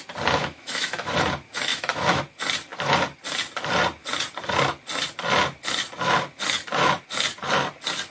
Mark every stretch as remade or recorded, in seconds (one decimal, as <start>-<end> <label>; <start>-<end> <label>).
0.0-0.4 recorded; 0.4-1.1 remade; 1.1-1.7 recorded; 1.7-2.2 remade; 2.2-8.1 recorded